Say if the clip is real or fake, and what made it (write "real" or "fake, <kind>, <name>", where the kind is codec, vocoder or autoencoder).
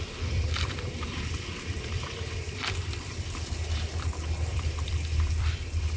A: fake, vocoder, BigVGAN v2